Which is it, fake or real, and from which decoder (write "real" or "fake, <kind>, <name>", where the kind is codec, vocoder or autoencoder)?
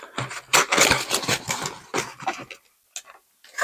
real